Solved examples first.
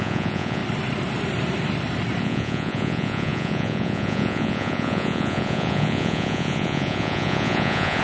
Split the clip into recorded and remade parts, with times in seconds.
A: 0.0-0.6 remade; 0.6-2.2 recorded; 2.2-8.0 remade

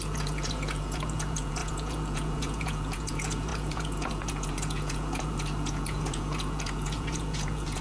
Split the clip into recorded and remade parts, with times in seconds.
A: 0.0-7.8 remade

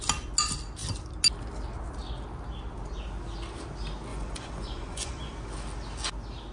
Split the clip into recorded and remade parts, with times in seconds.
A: 0.0-4.1 recorded; 4.1-5.3 remade; 5.3-6.5 recorded

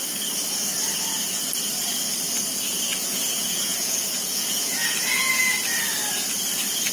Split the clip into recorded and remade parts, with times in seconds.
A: 0.0-2.9 recorded; 2.9-5.4 remade; 5.4-6.9 recorded